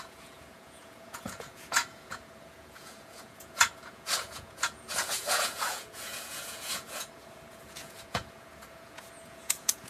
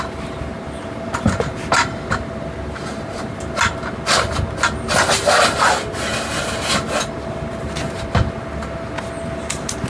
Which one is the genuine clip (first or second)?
second